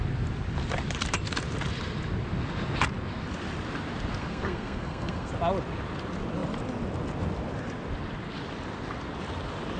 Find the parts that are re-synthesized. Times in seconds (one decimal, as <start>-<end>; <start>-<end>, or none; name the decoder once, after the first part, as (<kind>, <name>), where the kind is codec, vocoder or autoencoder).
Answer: 4.2-5.3 (codec, SNAC)